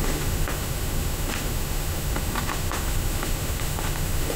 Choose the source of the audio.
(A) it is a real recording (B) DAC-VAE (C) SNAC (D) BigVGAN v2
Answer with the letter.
B